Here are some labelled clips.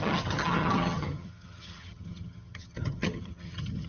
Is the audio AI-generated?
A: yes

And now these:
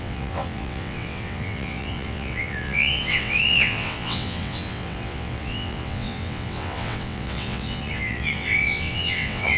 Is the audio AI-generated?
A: yes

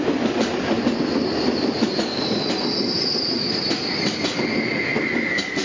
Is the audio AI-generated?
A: no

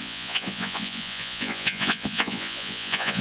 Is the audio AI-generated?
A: yes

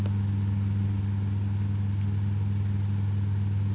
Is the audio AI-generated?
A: no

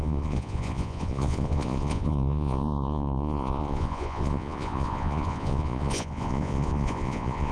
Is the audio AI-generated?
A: yes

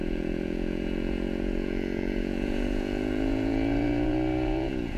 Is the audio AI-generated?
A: yes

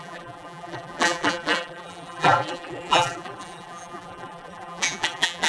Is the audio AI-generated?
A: yes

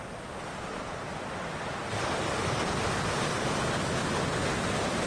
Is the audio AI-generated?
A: no